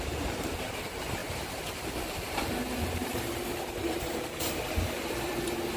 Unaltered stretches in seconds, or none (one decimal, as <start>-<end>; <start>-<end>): none